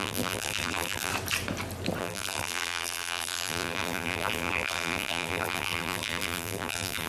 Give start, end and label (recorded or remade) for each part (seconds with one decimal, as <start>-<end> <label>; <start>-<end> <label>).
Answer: 0.0-1.1 remade; 1.1-2.0 recorded; 2.0-7.1 remade